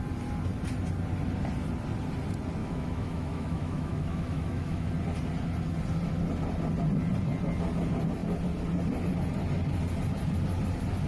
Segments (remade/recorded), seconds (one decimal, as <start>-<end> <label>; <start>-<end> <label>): 0.0-2.6 recorded; 2.6-4.9 remade; 4.9-11.1 recorded